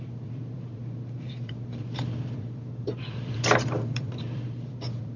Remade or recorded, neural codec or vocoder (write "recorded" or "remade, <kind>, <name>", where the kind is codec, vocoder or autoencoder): remade, vocoder, BigVGAN v2